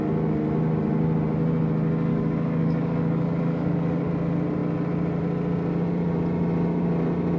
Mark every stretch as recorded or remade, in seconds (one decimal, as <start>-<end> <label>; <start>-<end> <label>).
0.0-2.1 recorded; 2.1-4.1 remade; 4.1-7.4 recorded